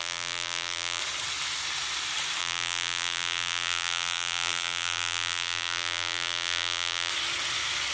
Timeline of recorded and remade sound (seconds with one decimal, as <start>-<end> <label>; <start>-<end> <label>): 0.0-1.0 remade; 1.0-2.4 recorded; 2.4-7.1 remade; 7.1-7.9 recorded